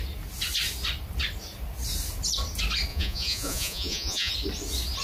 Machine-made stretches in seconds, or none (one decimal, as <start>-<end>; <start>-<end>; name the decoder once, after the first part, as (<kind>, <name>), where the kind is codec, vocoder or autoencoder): 2.9-4.3 (vocoder, Vocos)